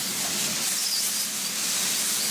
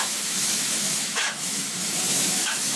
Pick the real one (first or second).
first